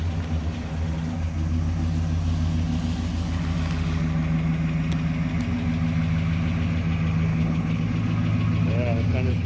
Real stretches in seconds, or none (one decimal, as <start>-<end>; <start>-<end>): 0.0-7.3; 7.8-9.5